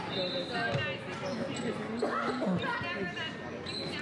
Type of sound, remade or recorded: recorded